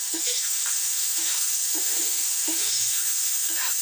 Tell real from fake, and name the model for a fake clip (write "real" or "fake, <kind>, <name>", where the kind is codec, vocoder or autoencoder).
fake, autoencoder, DAC-VAE